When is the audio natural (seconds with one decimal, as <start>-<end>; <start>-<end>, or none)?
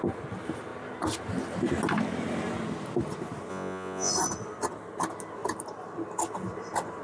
0.0-3.5; 4.1-7.0